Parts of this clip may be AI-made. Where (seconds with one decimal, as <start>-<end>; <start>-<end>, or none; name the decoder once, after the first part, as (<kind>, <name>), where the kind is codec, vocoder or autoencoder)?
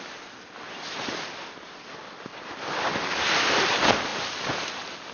none